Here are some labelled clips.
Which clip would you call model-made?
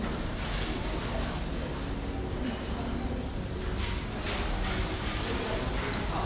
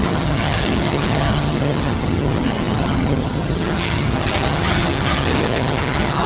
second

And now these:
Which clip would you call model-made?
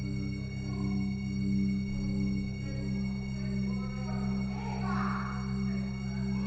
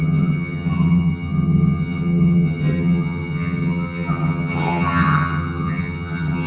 second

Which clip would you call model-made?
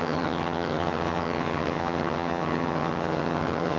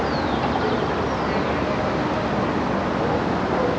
first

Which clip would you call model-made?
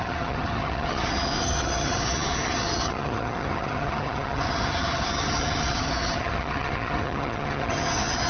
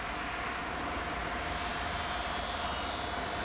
first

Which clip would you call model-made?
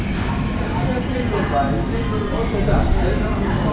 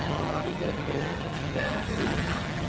second